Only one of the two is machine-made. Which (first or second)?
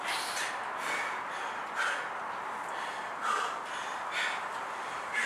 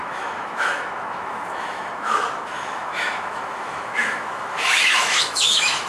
second